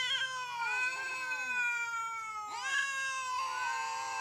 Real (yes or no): yes